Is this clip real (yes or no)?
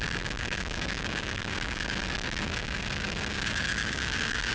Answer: no